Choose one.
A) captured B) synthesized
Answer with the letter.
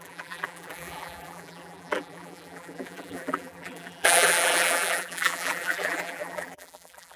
B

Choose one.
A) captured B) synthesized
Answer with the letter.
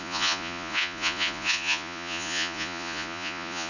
B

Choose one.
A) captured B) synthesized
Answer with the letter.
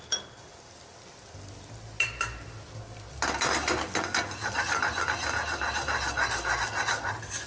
A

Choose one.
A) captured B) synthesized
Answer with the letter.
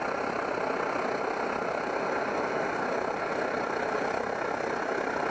A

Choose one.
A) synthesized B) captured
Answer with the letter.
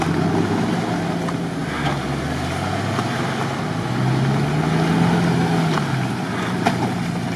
B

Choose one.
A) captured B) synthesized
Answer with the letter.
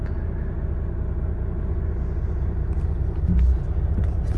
A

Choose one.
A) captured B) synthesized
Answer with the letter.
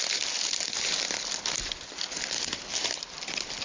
A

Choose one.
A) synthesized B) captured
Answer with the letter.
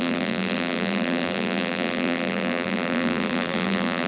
A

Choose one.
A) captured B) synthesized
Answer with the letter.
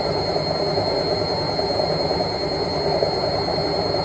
A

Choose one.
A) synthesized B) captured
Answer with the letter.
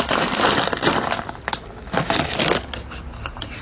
B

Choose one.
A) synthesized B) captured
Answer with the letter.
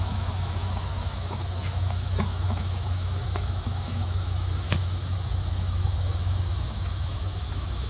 A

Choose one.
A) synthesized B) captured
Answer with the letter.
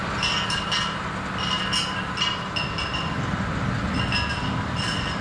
B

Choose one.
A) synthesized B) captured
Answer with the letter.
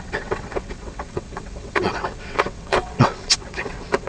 A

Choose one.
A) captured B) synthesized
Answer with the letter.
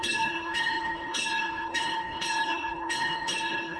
B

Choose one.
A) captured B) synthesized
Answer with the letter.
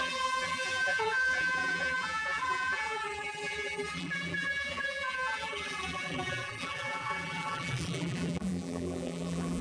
B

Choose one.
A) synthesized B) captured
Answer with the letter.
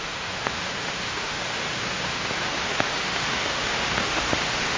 A